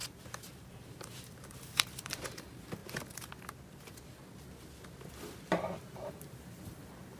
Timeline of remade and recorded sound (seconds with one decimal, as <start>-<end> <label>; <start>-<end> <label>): 0.0-2.8 remade; 2.8-6.1 recorded; 6.1-7.2 remade